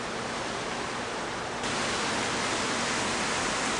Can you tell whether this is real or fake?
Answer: real